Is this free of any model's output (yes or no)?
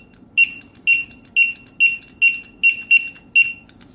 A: yes